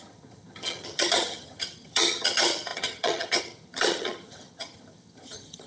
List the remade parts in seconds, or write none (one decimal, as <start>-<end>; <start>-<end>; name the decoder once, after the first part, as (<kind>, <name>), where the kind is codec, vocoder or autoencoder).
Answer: 0.0-5.7 (vocoder, HiFi-GAN)